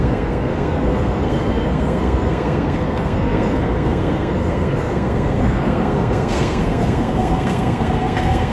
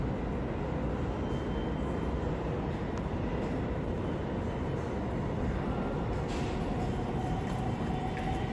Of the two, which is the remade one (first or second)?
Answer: first